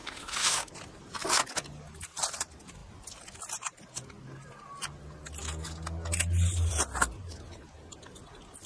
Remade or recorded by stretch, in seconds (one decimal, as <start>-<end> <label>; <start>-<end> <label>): 0.0-0.7 remade; 0.7-8.7 recorded